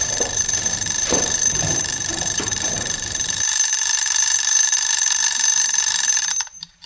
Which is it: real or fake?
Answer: fake